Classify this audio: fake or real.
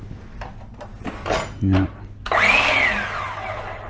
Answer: real